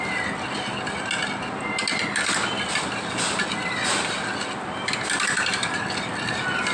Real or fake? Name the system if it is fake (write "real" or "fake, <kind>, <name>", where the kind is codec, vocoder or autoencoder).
real